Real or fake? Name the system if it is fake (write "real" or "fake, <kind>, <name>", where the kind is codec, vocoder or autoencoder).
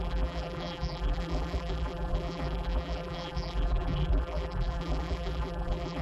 fake, vocoder, BigVGAN v2